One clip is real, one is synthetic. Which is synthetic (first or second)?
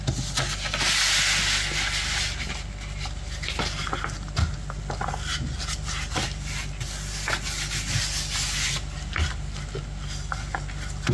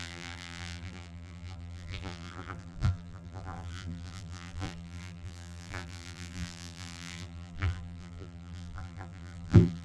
second